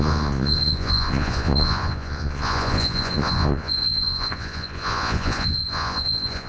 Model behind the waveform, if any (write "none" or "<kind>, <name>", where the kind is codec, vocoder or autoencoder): vocoder, Vocos